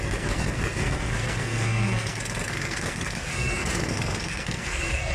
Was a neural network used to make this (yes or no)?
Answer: yes